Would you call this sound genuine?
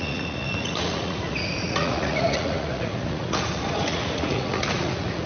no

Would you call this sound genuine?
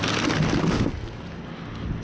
yes